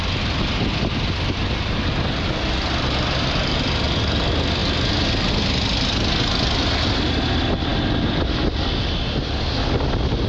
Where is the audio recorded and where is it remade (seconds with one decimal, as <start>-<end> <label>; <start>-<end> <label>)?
0.0-10.3 recorded